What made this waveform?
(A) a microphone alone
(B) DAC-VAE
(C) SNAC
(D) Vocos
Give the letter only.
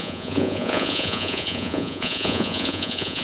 D